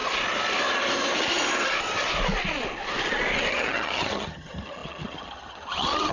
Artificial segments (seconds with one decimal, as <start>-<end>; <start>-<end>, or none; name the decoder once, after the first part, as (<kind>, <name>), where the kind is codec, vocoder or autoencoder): 3.5-6.1 (vocoder, HiFi-GAN)